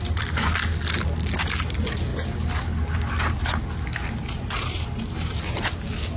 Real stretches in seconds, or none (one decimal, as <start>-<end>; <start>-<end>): 0.0-6.2

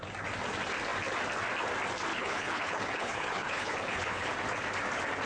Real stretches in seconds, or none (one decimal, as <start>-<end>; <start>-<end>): 0.0-2.1; 4.3-5.3

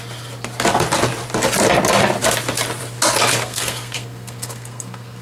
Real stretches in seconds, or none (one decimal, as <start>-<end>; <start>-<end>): 0.0-3.4

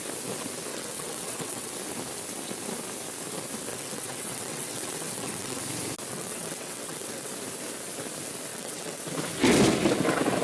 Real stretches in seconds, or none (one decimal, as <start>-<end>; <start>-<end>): 0.0-0.7; 1.7-3.7; 5.6-6.1; 7.3-8.5; 9.0-10.4

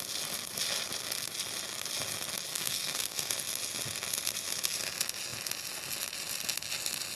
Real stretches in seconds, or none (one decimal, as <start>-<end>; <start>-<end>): 0.0-2.5; 3.3-7.2

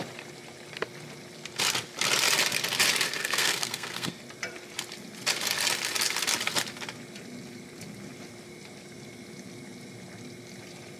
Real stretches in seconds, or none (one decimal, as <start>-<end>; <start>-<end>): 0.0-3.2; 4.1-11.0

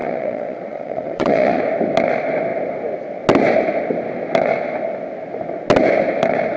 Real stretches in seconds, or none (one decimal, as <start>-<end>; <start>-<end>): 1.6-6.6